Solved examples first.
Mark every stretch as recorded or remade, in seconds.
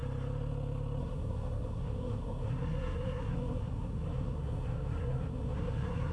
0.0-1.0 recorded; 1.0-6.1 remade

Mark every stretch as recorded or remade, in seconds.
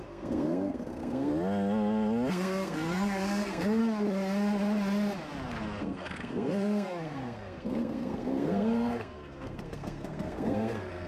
0.0-1.3 remade; 1.3-2.3 recorded; 2.3-3.8 remade; 3.8-5.8 recorded; 5.8-11.1 remade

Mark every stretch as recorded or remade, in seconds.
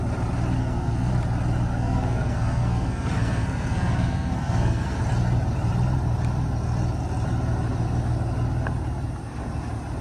0.0-0.6 recorded; 0.6-1.1 remade; 1.1-1.7 recorded; 1.7-5.0 remade; 5.0-10.0 recorded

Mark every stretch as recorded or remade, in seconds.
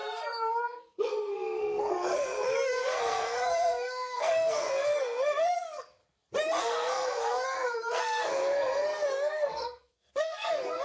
0.0-6.0 remade; 6.0-6.6 recorded; 6.6-10.8 remade